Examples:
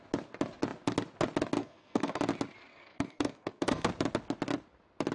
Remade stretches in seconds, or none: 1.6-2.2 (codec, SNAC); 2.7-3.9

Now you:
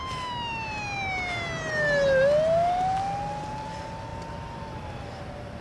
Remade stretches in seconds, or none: none